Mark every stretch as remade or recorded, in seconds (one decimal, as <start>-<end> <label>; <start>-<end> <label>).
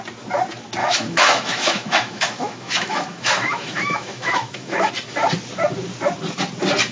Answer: 0.0-0.8 recorded; 0.8-4.9 remade; 4.9-6.9 recorded